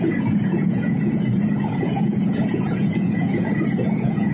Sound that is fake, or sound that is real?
fake